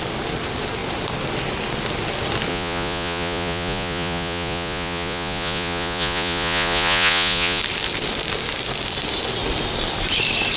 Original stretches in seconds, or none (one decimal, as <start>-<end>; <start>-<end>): 0.0-2.5; 7.6-10.6